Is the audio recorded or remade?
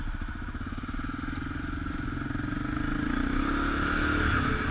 recorded